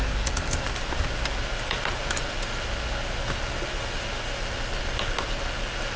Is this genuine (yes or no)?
yes